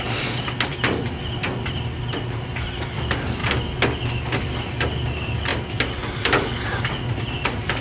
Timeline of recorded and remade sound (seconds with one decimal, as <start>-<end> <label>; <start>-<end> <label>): 0.0-7.8 recorded